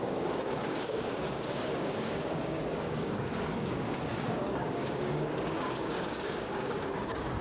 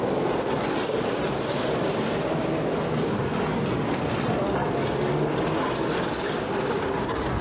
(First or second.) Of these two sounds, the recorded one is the second